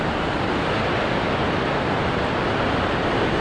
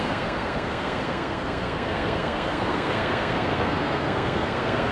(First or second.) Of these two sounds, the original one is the first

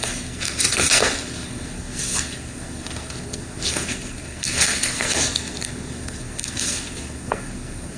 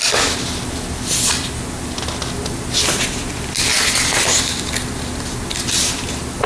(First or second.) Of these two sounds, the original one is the second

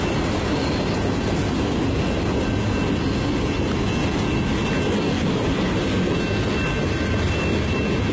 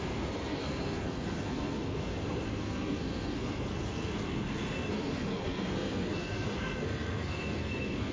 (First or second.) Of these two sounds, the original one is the first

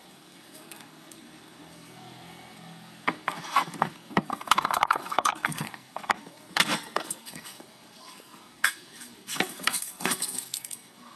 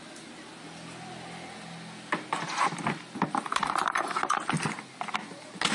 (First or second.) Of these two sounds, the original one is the second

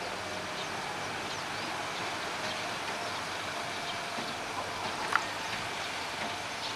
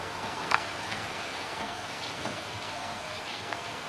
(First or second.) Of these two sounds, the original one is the first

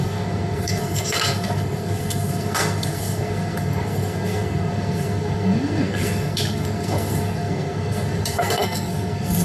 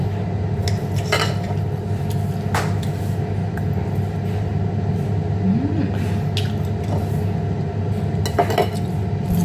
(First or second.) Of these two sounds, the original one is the second